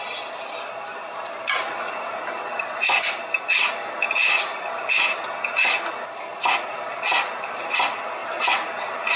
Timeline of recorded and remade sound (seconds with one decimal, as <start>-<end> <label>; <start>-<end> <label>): 0.0-0.9 recorded; 0.9-2.2 remade; 2.2-8.2 recorded; 8.2-9.2 remade